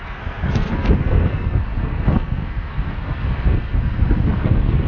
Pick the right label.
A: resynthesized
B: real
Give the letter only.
A